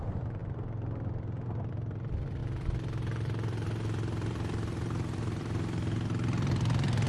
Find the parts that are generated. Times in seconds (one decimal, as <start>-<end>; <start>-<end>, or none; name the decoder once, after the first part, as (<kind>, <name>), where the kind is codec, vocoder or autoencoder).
0.0-7.1 (vocoder, BigVGAN v2)